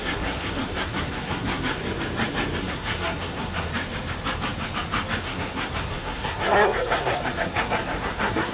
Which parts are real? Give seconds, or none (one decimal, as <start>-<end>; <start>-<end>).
1.8-2.6; 3.7-5.2